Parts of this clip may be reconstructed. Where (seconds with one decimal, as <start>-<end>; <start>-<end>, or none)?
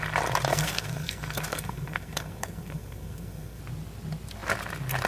0.5-3.6